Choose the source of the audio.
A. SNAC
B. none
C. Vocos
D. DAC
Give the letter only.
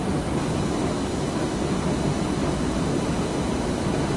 B